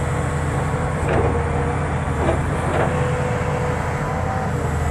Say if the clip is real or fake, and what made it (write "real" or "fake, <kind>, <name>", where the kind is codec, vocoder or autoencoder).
real